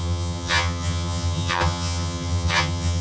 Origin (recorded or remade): remade